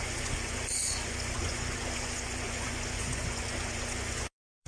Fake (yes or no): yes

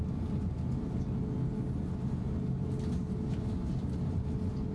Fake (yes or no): no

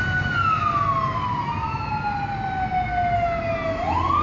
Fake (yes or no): no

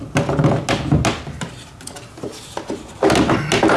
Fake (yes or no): no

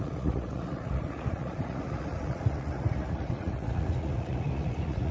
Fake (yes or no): yes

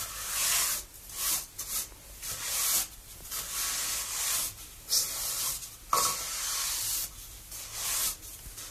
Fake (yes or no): no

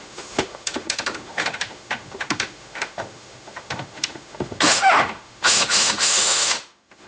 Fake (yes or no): yes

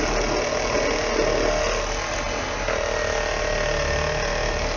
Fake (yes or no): no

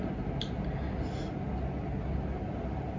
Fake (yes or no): no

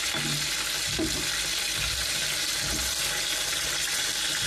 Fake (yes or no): no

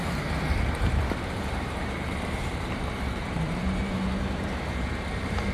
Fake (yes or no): yes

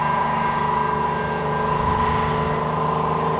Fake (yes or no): no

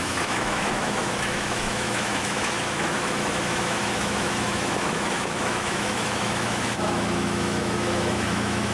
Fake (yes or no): yes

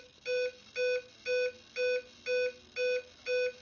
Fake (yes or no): no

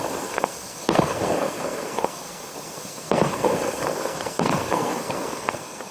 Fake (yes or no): yes